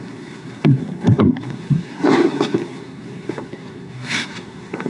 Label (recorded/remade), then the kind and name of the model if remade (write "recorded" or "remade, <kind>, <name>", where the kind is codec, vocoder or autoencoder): remade, codec, SNAC